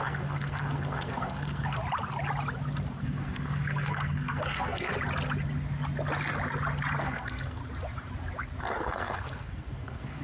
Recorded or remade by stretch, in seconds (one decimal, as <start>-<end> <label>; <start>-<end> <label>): 0.0-1.8 remade; 1.8-3.0 recorded; 3.0-4.9 remade; 4.9-7.0 recorded; 7.0-7.6 remade; 7.6-8.6 recorded; 8.6-10.2 remade